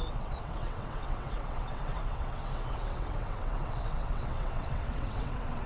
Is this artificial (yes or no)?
yes